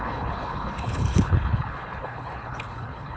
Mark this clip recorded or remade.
remade